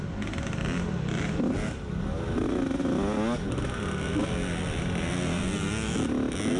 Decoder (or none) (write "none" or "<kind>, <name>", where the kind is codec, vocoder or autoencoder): none